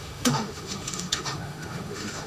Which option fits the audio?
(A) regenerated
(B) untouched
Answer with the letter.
A